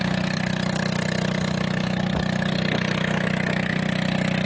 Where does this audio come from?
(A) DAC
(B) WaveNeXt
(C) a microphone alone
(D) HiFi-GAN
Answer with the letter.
C